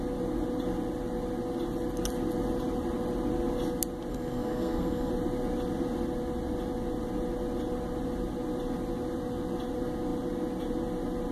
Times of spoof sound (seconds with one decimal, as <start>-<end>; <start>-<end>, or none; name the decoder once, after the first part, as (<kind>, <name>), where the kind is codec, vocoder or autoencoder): 4.1-5.1 (codec, SNAC)